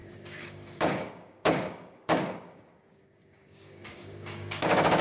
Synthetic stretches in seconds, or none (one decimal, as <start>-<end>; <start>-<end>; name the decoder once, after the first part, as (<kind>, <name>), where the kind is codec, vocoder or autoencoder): 0.0-5.0 (codec, DAC)